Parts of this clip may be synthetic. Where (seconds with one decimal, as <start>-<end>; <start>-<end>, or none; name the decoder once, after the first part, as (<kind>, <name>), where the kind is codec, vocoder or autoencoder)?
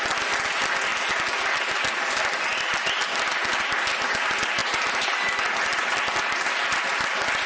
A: none